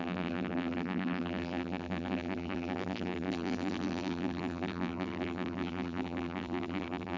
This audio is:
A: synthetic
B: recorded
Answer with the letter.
A